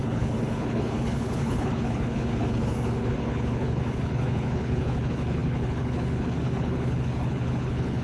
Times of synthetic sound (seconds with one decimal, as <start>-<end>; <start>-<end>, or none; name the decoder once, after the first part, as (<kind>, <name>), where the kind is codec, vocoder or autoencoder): 0.0-8.0 (codec, HILCodec)